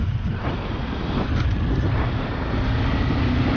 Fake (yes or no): no